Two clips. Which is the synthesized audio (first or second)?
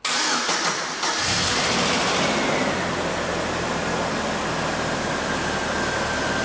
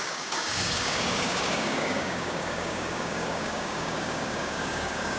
second